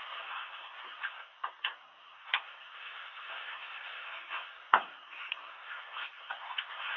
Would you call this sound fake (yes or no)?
yes